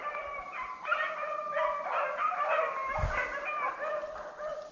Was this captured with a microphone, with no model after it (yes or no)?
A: yes